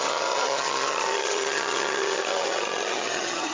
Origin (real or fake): fake